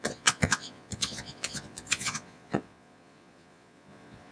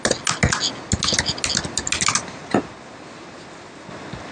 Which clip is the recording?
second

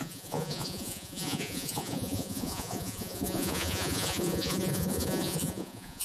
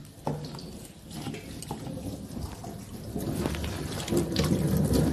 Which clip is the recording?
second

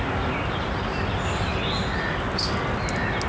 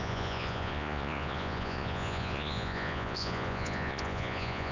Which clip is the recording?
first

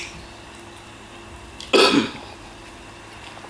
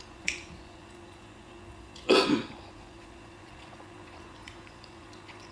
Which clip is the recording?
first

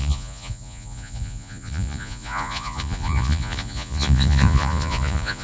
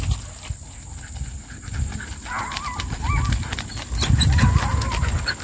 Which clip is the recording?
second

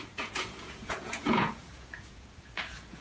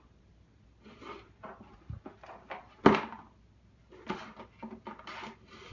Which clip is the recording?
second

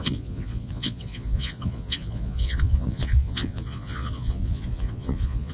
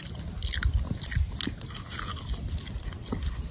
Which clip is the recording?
second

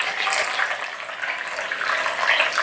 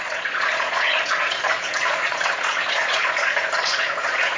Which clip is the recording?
first